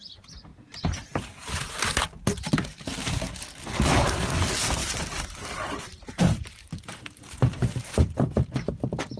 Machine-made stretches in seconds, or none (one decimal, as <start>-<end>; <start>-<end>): 4.8-8.7